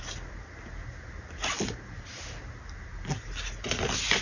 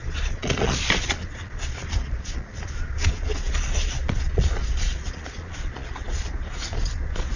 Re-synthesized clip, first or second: second